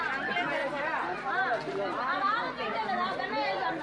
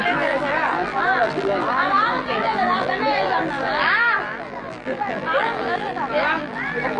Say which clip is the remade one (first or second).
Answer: second